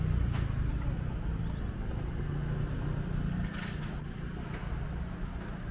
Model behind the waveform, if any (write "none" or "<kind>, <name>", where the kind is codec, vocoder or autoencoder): none